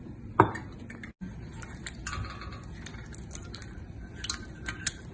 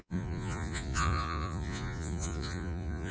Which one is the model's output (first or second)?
second